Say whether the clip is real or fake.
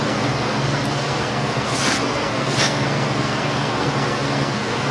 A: fake